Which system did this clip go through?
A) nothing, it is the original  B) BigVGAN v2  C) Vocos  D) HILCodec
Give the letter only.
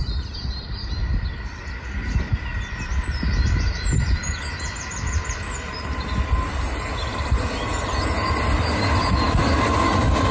A